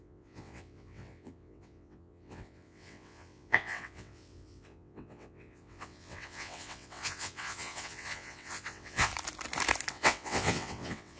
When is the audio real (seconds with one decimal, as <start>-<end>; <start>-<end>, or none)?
9.1-9.9